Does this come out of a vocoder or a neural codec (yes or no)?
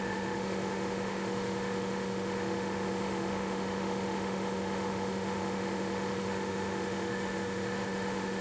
yes